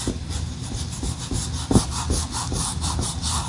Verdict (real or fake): real